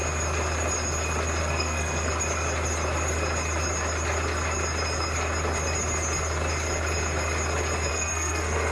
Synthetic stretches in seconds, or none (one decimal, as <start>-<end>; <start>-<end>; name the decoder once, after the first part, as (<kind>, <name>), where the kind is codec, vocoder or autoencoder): 1.4-2.1 (codec, SNAC); 7.9-8.7